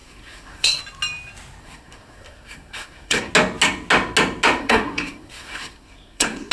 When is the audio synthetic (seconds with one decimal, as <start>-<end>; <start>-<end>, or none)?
0.0-0.8; 1.6-3.3; 4.6-6.5